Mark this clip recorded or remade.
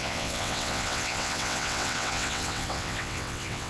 remade